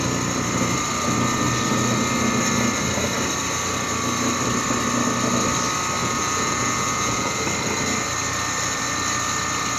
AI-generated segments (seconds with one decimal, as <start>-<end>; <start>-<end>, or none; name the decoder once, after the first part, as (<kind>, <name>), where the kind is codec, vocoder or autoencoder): 6.0-7.4 (vocoder, Vocos)